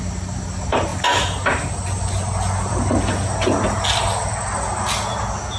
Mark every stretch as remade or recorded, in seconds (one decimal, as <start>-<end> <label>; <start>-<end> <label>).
0.0-5.6 recorded